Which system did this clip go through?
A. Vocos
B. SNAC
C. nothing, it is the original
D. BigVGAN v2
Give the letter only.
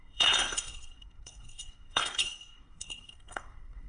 B